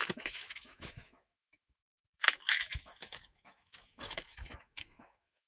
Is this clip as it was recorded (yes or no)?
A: no